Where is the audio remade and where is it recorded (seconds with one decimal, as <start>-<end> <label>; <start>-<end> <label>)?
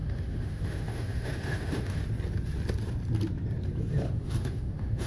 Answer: 0.0-2.0 remade; 2.0-4.1 recorded; 4.1-5.1 remade